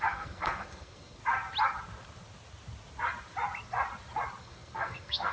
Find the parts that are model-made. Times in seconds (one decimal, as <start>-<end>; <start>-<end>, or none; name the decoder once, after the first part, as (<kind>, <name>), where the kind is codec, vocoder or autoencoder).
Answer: 0.0-1.2 (codec, SNAC); 4.4-5.3